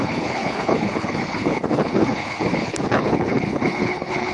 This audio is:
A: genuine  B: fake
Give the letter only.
B